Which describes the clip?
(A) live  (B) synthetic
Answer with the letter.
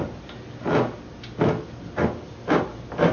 A